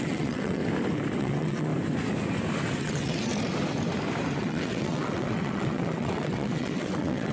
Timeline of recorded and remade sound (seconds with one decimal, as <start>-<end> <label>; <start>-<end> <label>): 0.0-0.6 remade; 0.6-1.2 recorded; 1.2-1.7 remade; 1.7-2.8 recorded; 2.8-3.3 remade; 3.3-4.4 recorded; 4.4-7.3 remade